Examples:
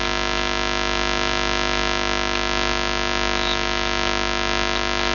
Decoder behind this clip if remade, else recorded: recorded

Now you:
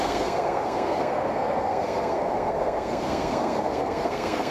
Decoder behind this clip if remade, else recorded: remade, codec, SNAC